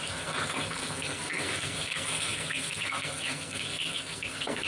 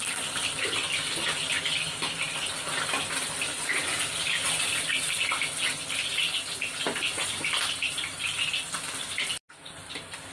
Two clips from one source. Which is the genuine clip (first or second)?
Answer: second